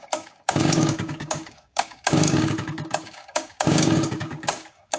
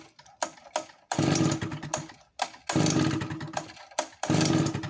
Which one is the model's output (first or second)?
first